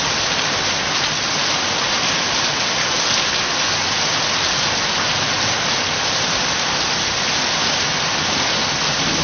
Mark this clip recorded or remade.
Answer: recorded